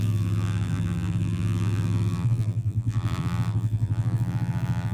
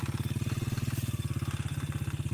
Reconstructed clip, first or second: first